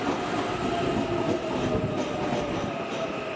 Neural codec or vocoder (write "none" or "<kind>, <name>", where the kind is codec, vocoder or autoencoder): none